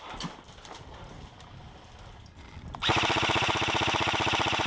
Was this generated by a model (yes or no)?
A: yes